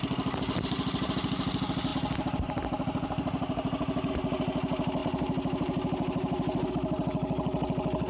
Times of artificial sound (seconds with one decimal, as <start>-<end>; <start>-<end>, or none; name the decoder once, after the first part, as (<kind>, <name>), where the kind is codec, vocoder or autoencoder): none